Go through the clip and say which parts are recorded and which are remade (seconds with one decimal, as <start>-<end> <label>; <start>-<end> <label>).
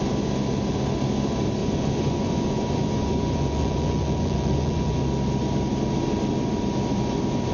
0.0-1.6 recorded; 1.6-5.0 remade; 5.0-7.5 recorded